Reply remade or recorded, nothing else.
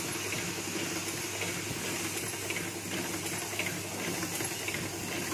recorded